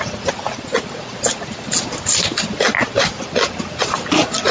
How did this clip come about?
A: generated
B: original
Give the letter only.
B